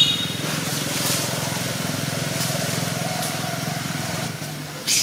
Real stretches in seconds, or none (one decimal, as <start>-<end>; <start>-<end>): 0.7-3.7